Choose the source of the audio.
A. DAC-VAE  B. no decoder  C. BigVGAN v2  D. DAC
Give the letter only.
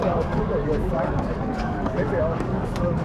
D